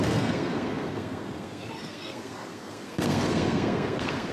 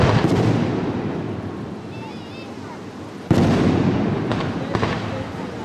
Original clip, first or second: second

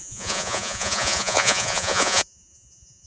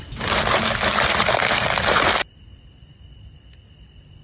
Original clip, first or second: second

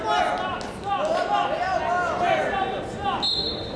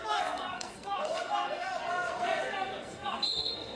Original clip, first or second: first